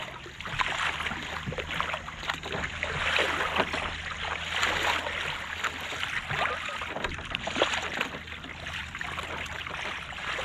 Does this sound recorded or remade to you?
recorded